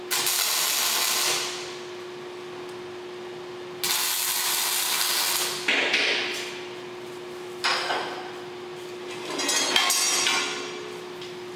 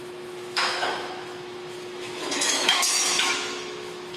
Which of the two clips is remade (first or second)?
second